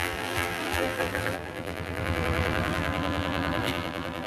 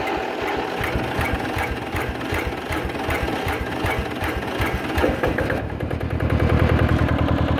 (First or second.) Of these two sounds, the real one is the second